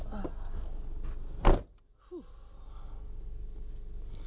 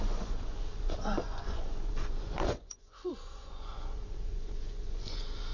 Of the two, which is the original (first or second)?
first